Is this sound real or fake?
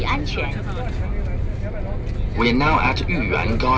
real